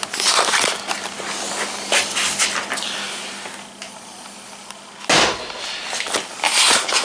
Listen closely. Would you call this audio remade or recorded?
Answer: recorded